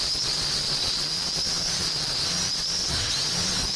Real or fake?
fake